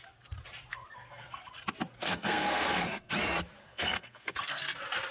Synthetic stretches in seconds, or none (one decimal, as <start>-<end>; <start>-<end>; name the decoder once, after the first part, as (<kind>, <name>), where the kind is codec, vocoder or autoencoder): 0.7-1.5 (codec, SNAC); 2.0-3.1; 3.6-4.6